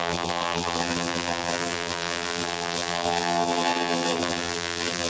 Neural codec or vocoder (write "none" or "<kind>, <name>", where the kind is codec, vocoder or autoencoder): vocoder, BigVGAN v2